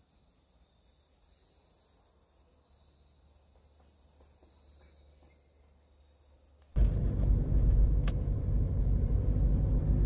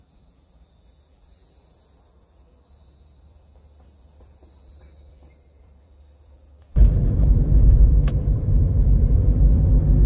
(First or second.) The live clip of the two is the first